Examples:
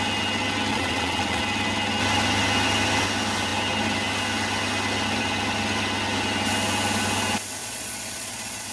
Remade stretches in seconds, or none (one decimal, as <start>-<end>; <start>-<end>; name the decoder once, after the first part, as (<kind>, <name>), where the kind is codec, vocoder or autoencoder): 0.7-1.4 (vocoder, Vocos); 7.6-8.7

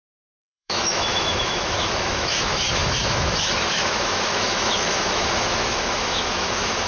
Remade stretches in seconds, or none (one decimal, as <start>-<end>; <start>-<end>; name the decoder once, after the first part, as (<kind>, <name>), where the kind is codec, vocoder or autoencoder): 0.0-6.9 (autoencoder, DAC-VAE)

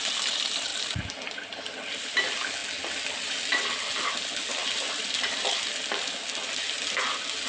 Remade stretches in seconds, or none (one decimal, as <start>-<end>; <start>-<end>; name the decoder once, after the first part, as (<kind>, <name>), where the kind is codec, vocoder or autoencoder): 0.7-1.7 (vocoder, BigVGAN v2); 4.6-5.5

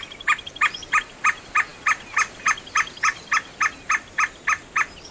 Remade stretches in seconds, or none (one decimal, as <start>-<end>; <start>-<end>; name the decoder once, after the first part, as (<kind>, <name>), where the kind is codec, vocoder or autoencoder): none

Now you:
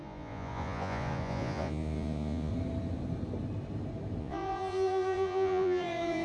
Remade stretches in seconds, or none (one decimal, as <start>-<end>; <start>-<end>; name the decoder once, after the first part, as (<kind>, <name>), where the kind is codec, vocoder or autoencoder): 0.0-2.5 (vocoder, Vocos); 4.2-6.2

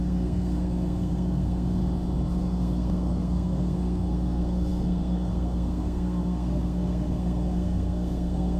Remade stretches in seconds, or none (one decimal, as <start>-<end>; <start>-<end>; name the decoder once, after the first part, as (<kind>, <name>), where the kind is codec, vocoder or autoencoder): 0.0-1.8 (codec, SNAC); 2.3-8.6

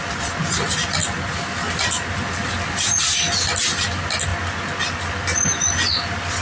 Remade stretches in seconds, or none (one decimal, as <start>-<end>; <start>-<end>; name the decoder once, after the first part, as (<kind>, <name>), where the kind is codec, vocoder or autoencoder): none

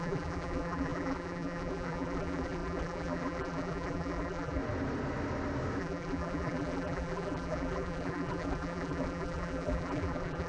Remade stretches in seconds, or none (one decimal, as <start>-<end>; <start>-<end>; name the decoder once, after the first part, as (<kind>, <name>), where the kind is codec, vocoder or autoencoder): 0.0-4.6 (vocoder, BigVGAN v2); 5.8-10.5